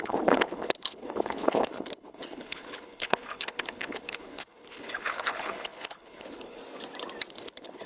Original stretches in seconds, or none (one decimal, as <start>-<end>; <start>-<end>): 6.6-7.3